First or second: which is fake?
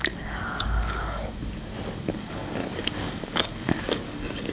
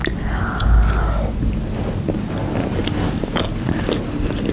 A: first